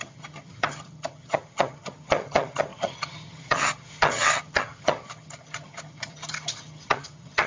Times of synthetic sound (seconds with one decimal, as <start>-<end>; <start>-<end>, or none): 0.0-7.5